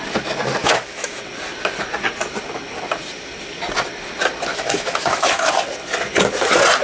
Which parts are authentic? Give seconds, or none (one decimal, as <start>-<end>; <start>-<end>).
0.0-0.6; 1.2-4.5; 5.5-6.8